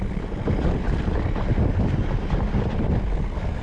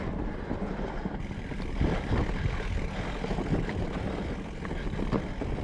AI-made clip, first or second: first